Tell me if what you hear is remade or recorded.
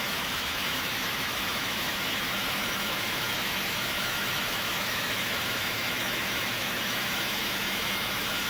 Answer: remade